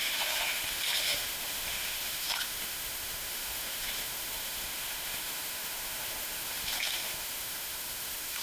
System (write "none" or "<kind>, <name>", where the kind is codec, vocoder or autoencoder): autoencoder, DAC-VAE